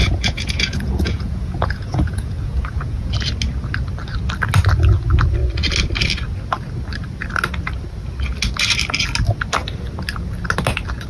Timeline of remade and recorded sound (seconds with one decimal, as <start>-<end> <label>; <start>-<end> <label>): 0.0-3.1 remade; 3.1-11.1 recorded